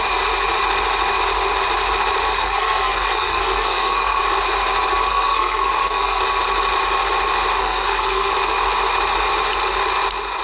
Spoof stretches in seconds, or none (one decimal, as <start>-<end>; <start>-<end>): 2.3-4.2; 5.1-6.2; 7.6-8.3